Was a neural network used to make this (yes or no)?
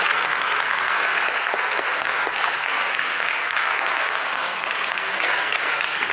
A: yes